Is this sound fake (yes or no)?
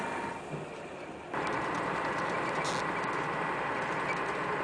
no